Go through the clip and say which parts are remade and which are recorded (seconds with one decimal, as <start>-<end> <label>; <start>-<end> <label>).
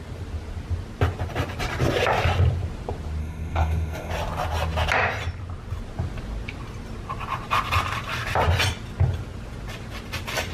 0.0-3.2 recorded; 3.2-4.1 remade; 4.1-10.5 recorded